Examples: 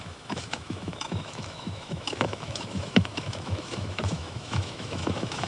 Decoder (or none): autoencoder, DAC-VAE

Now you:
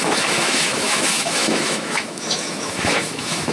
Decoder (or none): autoencoder, DAC-VAE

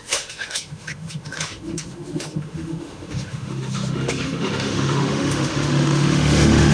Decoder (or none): autoencoder, DAC-VAE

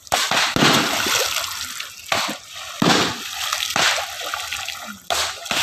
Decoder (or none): none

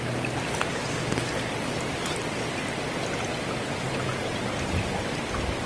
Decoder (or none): none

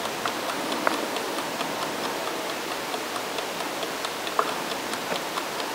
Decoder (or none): none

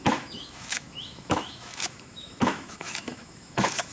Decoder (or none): autoencoder, DAC-VAE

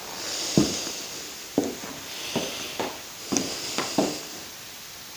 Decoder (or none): none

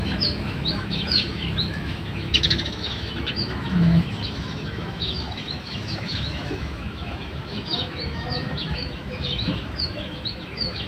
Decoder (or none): autoencoder, DAC-VAE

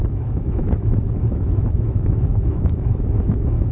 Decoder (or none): autoencoder, DAC-VAE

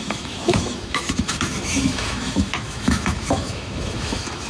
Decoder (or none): autoencoder, DAC-VAE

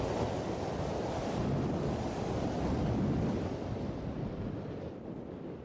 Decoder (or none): none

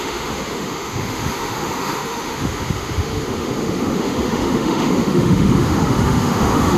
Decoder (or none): autoencoder, DAC-VAE